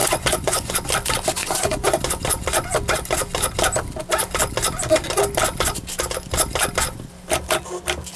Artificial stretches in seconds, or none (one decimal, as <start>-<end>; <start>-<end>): 0.0-0.7; 1.4-2.0